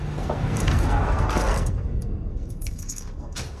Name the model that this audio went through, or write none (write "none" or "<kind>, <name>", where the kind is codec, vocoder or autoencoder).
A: codec, SNAC